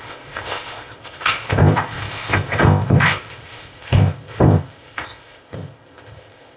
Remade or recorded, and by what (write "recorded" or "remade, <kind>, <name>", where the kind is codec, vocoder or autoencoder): remade, codec, ZipCodec